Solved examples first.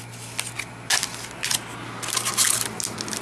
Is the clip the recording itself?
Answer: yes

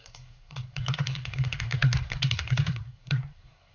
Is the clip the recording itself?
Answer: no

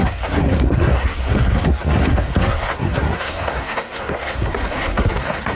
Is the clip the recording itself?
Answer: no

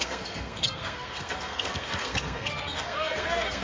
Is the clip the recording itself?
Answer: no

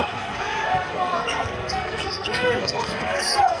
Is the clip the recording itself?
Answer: no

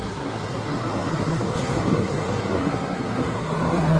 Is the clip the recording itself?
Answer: no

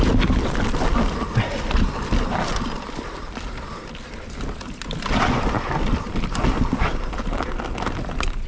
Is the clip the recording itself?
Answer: yes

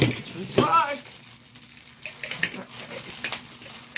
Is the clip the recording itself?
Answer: yes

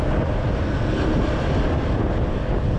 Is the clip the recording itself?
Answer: yes